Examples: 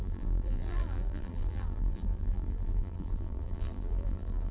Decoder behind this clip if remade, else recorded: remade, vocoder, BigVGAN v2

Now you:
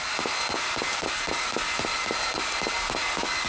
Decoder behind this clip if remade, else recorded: recorded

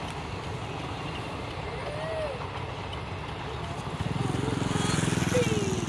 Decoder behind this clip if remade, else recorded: recorded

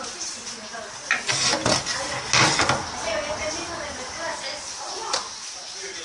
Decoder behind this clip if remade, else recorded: recorded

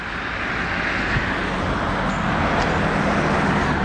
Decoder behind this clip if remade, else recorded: recorded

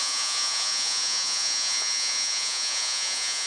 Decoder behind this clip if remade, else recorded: remade, vocoder, Vocos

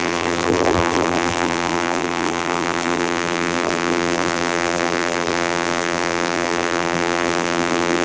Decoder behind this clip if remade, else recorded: remade, vocoder, BigVGAN v2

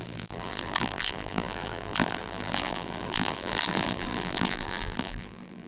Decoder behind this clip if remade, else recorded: remade, vocoder, BigVGAN v2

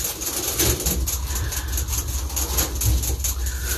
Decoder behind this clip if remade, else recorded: recorded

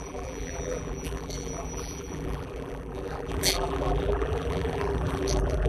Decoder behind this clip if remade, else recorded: remade, vocoder, BigVGAN v2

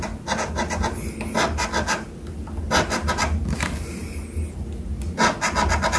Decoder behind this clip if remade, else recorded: recorded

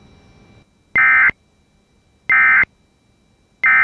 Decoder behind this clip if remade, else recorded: recorded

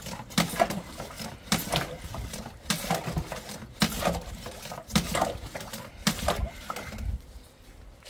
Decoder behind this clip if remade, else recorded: recorded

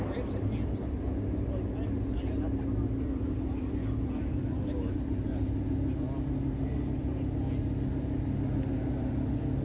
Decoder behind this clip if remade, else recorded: recorded